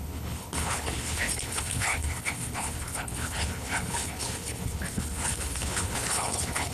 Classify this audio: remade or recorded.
remade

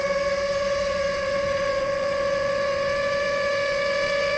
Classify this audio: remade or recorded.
remade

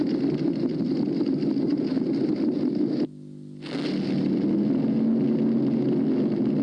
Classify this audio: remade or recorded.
recorded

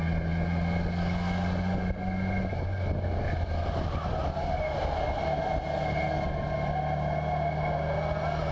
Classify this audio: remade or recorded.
recorded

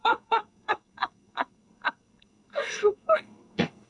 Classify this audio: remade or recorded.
remade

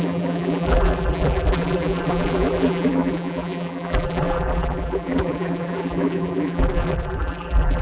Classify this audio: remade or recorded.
remade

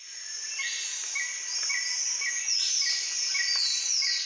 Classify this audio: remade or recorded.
recorded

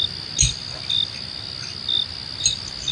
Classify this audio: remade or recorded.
recorded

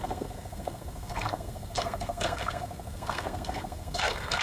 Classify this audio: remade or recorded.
remade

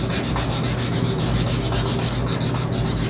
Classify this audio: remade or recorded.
recorded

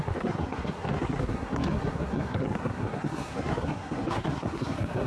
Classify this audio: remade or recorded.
remade